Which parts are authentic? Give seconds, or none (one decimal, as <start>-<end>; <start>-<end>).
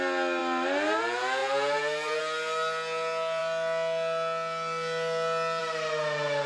0.0-1.4; 2.2-6.5